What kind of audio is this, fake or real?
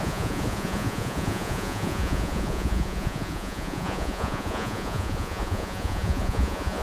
fake